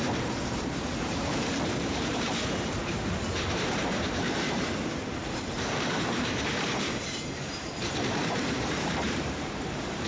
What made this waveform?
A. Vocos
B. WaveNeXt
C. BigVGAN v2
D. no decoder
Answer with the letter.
C